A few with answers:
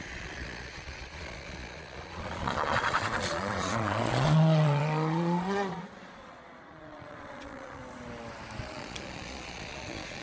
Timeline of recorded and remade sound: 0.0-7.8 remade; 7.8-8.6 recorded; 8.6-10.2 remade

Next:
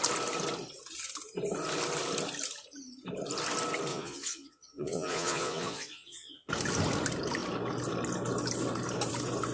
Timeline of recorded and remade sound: 0.0-3.9 recorded; 3.9-6.5 remade; 6.5-9.5 recorded

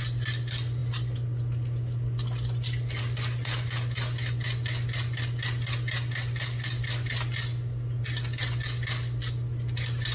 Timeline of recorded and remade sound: 0.0-10.1 recorded

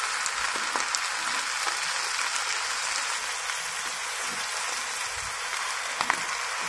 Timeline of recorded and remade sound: 0.0-4.0 recorded; 4.0-4.5 remade; 4.5-6.7 recorded

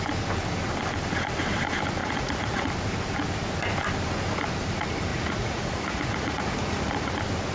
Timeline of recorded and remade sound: 0.0-2.0 recorded; 2.0-2.7 remade; 2.7-5.1 recorded; 5.1-7.1 remade; 7.1-7.5 recorded

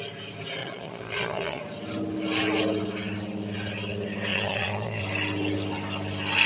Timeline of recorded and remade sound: 0.0-0.6 recorded; 0.6-1.6 remade; 1.6-4.3 recorded; 4.3-5.0 remade; 5.0-6.5 recorded

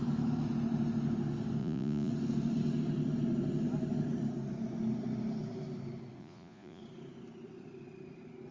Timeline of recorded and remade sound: 0.0-1.6 recorded; 1.6-2.1 remade; 2.1-6.2 recorded; 6.2-6.8 remade; 6.8-8.5 recorded